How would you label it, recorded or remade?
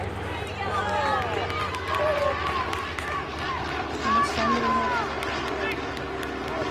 recorded